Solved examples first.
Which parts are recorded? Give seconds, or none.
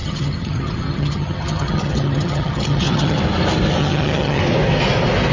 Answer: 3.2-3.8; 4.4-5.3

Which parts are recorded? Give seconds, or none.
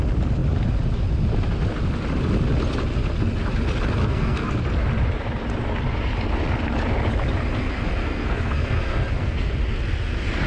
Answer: 0.0-4.0; 4.5-8.0; 9.5-10.5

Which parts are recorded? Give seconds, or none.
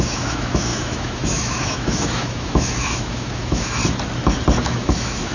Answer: 3.8-4.6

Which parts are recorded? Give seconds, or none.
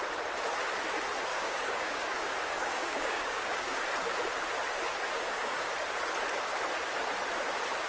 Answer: 0.0-1.3; 3.8-5.1; 5.7-7.9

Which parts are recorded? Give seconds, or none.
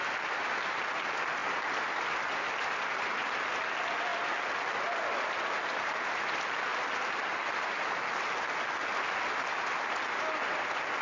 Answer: 0.0-11.0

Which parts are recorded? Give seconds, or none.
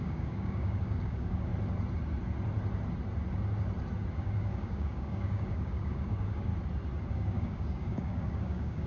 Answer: 1.5-4.1; 6.5-7.1